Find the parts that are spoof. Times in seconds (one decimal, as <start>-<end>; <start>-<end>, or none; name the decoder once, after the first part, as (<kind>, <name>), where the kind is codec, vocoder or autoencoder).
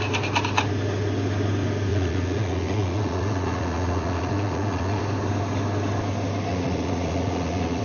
1.9-5.0 (vocoder, Vocos); 6.5-7.8